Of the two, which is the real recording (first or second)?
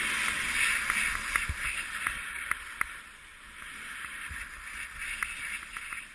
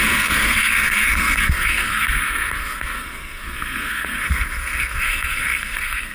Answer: first